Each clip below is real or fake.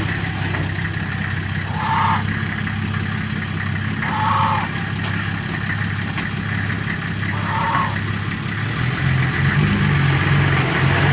real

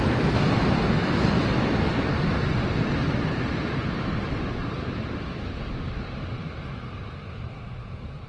real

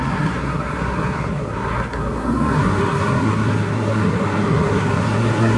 fake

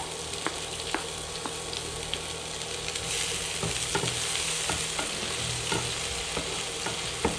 real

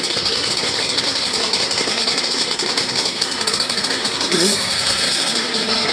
fake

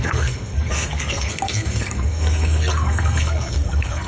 fake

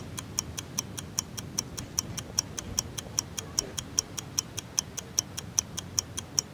real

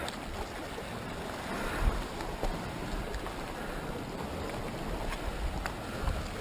real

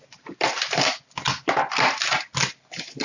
real